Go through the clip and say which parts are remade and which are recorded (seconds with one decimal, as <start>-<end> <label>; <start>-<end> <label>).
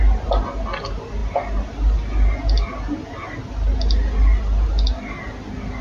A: 0.0-5.8 recorded